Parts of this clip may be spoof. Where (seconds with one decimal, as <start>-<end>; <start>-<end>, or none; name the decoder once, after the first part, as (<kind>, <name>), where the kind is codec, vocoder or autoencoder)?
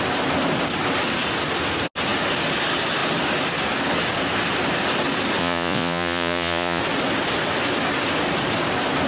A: 5.4-6.8 (vocoder, Vocos)